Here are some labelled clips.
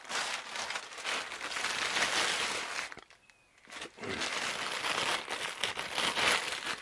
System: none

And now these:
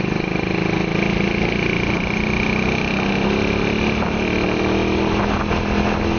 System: none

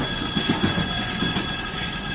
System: vocoder, Vocos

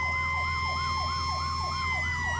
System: none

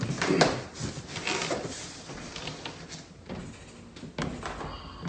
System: none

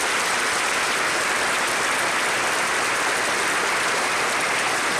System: none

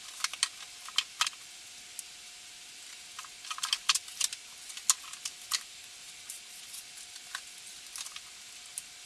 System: none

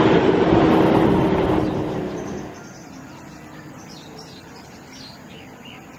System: none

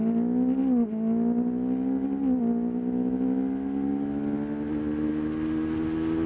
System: none